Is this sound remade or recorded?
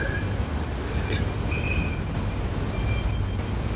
recorded